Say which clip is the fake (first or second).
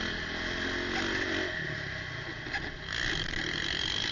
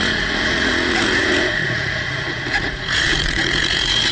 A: second